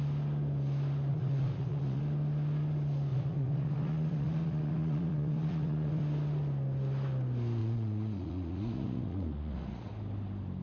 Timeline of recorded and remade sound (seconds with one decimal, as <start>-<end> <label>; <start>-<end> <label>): 0.0-1.1 recorded; 1.1-2.0 remade; 2.0-3.1 recorded; 3.1-6.0 remade; 6.0-7.6 recorded; 7.6-9.9 remade; 9.9-10.6 recorded